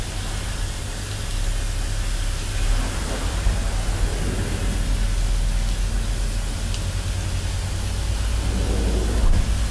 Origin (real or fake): real